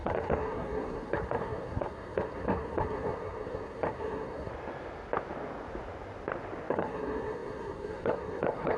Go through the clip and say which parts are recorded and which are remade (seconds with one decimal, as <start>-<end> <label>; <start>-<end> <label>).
0.0-4.5 remade; 4.5-6.7 recorded; 6.7-8.8 remade